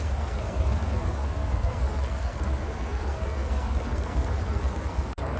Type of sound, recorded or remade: remade